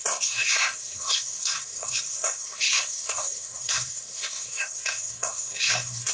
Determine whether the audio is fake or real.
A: fake